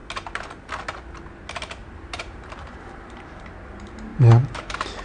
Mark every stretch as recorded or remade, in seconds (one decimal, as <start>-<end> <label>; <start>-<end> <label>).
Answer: 0.0-1.8 recorded; 1.8-3.5 remade; 3.5-4.1 recorded; 4.1-5.0 remade